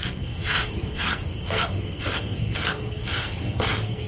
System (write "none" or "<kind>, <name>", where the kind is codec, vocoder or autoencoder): codec, SNAC